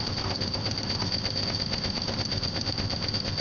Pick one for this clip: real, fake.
fake